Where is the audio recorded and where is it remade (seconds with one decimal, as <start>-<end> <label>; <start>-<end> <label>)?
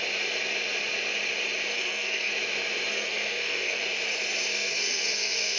0.0-1.7 recorded; 1.7-2.3 remade; 2.3-2.9 recorded; 2.9-3.8 remade; 3.8-4.5 recorded; 4.5-5.6 remade